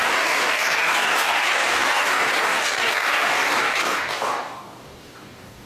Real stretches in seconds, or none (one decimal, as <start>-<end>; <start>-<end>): none